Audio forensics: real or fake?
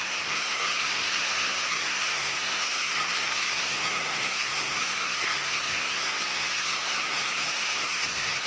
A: fake